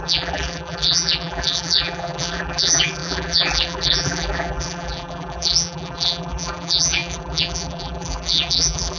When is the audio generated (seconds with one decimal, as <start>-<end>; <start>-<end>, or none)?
0.0-9.0